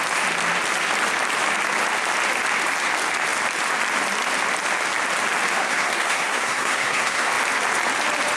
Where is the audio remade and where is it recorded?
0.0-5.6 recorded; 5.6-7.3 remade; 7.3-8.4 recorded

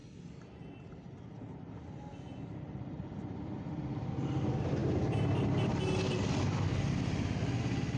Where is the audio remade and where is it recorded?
0.0-8.0 recorded

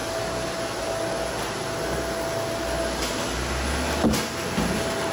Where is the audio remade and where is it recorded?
0.0-5.1 recorded